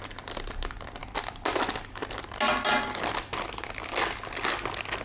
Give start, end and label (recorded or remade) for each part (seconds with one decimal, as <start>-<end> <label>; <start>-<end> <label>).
0.0-5.0 recorded